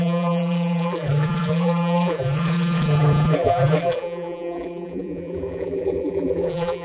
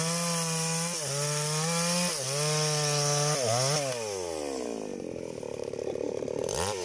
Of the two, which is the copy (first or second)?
first